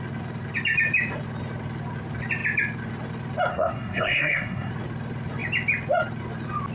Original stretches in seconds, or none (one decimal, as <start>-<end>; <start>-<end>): 0.0-3.5; 4.7-6.7